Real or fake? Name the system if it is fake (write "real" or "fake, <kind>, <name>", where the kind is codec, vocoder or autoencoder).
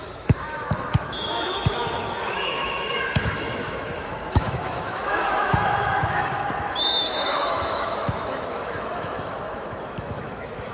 fake, autoencoder, DAC-VAE